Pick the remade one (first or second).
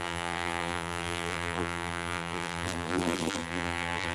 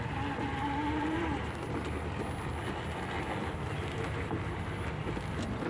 first